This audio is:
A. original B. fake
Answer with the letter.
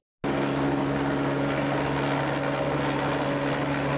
A